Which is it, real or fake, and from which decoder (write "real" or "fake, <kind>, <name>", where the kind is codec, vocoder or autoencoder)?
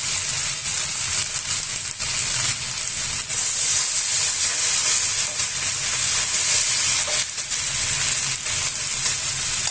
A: real